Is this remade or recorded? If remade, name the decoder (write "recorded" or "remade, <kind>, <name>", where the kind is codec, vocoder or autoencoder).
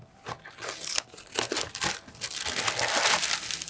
recorded